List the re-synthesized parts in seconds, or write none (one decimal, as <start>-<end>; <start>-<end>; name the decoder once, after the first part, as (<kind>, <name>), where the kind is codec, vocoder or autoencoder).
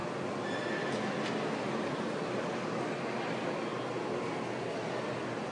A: none